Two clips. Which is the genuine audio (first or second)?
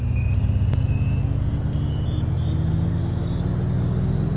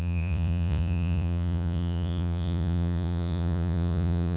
first